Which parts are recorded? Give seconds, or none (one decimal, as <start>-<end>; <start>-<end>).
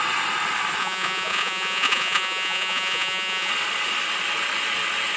0.0-0.8; 3.5-5.2